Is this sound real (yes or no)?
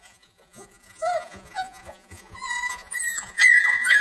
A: no